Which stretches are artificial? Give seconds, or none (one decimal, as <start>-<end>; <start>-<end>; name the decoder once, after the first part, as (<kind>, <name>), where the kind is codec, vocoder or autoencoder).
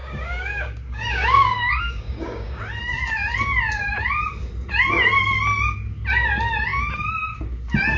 0.0-2.6 (codec, DAC)